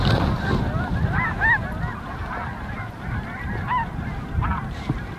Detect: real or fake real